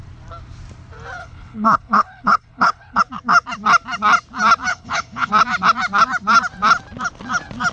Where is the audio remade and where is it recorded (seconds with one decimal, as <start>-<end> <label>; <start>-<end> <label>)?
0.0-1.2 recorded; 1.2-3.0 remade; 3.0-4.7 recorded; 4.7-5.3 remade; 5.3-7.7 recorded